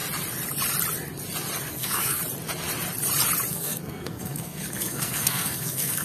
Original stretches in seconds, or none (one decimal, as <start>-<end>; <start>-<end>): 0.0-1.7; 2.2-3.5